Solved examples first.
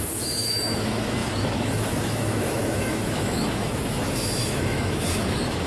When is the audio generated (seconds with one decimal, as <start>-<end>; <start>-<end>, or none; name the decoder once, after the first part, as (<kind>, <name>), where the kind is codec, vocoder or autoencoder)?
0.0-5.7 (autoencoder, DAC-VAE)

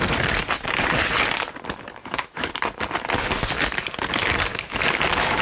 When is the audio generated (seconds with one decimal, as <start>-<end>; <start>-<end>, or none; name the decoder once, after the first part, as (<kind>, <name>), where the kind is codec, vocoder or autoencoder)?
2.0-2.5 (autoencoder, DAC-VAE); 4.5-5.4

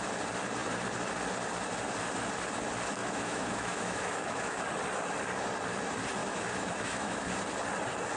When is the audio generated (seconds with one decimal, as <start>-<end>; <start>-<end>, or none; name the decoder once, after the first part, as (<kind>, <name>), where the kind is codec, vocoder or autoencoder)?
3.0-4.6 (autoencoder, DAC-VAE); 6.2-7.3

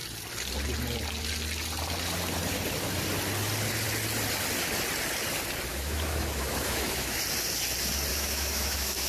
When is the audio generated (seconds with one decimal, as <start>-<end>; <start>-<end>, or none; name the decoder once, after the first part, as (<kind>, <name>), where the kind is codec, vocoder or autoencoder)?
5.7-7.2 (autoencoder, DAC-VAE); 8.1-9.1